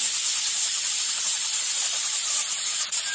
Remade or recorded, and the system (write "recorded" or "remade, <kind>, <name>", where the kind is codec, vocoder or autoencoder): recorded